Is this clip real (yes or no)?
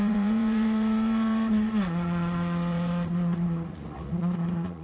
no